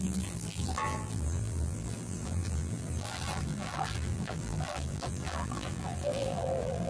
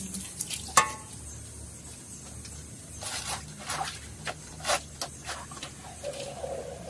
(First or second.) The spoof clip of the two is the first